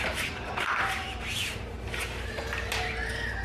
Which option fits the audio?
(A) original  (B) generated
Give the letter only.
B